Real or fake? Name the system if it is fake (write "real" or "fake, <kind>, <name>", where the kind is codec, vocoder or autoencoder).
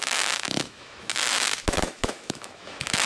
fake, autoencoder, DAC-VAE